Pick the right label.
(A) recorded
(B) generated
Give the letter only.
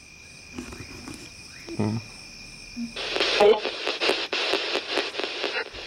A